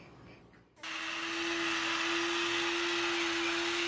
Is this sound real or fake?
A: real